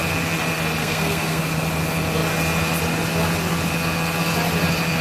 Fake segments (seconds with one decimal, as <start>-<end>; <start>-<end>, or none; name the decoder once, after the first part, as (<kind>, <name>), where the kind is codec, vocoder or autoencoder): 0.8-1.4 (codec, SNAC)